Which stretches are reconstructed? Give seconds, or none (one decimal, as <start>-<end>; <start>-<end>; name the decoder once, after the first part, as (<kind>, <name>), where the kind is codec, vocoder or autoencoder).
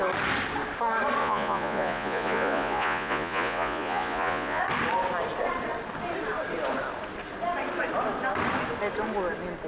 1.2-4.6 (vocoder, Vocos)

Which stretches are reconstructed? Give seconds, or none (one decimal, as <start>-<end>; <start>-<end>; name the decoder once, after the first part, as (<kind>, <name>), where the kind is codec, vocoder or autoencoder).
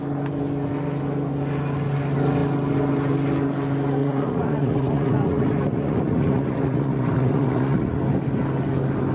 4.0-8.0 (vocoder, Vocos)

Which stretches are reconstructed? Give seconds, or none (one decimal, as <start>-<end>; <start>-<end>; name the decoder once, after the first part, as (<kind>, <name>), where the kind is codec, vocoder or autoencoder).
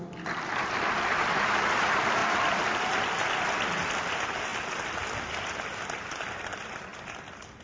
none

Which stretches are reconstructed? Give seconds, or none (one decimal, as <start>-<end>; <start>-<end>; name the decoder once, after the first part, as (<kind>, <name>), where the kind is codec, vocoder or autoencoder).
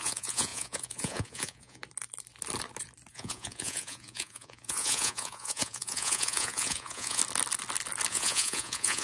0.0-1.8 (vocoder, Vocos); 3.1-7.2; 8.1-9.0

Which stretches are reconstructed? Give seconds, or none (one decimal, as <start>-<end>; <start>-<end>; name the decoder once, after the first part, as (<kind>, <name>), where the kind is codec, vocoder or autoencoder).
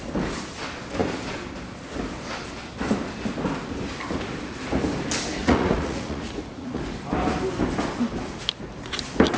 5.4-6.8 (vocoder, Vocos)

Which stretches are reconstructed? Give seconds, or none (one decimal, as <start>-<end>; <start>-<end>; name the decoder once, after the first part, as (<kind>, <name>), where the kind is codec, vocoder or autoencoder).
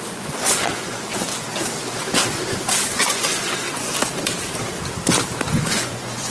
0.0-1.1 (vocoder, Vocos); 2.9-3.9; 5.5-6.3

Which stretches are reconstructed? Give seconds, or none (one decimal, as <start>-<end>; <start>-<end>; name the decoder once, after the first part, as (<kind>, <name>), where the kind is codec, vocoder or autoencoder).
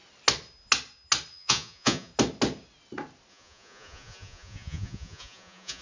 1.3-2.1 (vocoder, Vocos); 3.3-5.8